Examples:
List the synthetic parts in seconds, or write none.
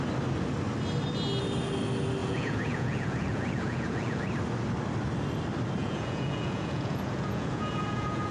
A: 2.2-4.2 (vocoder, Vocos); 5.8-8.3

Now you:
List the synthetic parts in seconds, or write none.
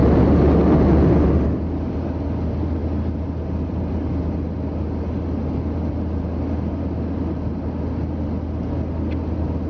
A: none